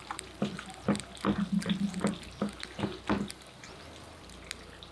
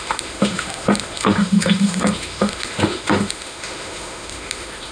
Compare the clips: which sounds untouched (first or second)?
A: first